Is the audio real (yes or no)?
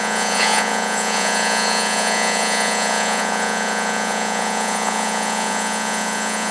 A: no